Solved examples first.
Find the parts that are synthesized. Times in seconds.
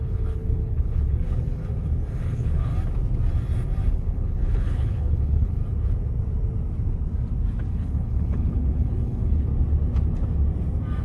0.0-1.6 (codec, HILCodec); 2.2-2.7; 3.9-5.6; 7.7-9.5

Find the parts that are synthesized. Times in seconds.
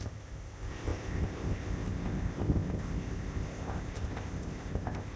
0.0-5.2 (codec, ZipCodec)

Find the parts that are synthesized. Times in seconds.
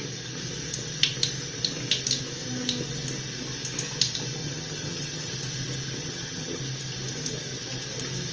4.4-5.3 (vocoder, HiFi-GAN); 6.0-6.6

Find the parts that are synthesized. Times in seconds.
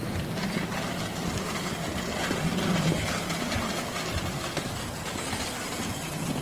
none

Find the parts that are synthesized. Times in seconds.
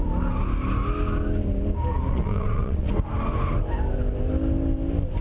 2.1-2.9 (vocoder, WaveNeXt)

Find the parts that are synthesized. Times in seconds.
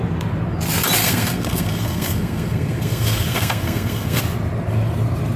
1.0-4.2 (codec, SNAC)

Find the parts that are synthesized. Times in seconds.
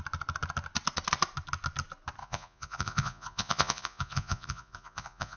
2.2-5.4 (vocoder, Vocos)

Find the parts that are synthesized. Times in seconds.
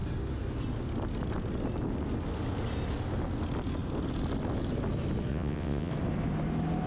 5.3-5.9 (vocoder, WaveNeXt)